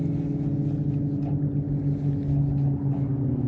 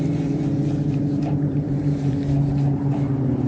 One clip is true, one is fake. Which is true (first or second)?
first